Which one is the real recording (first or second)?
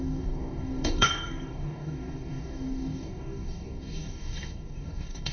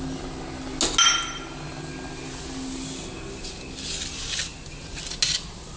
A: second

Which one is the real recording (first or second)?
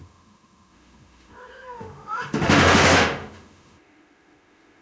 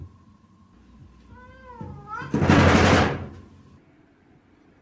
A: second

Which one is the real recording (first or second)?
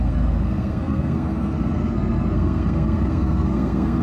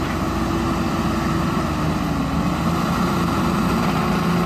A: second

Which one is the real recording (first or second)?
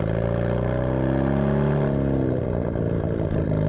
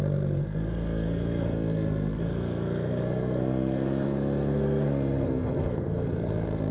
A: first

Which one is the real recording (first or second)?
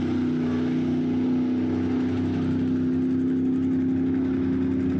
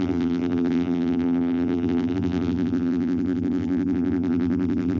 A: first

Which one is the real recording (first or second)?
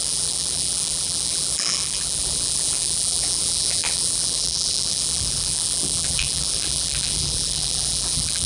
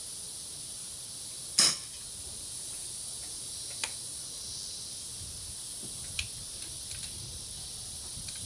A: second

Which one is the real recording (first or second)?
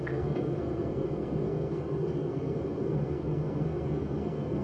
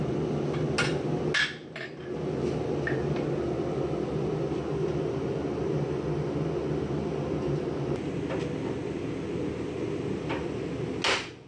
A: second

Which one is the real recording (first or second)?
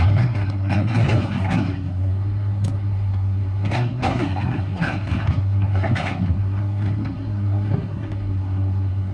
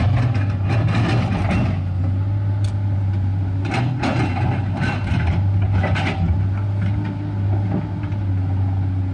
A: second